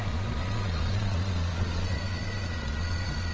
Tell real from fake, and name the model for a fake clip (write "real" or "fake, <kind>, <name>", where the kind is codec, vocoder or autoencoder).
fake, vocoder, Vocos